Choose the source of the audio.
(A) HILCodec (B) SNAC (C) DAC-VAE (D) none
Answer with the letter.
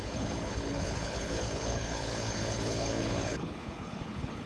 A